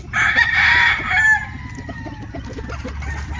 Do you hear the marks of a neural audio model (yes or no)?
no